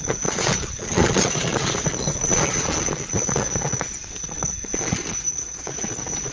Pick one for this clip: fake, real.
fake